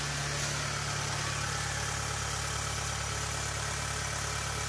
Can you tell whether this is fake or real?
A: real